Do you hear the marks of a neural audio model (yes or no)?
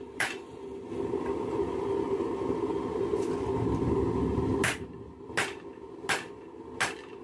no